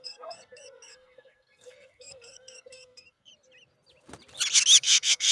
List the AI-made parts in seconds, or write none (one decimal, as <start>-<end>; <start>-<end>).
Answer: 0.0-3.3; 4.8-5.3